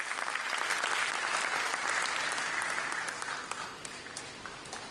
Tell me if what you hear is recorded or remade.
recorded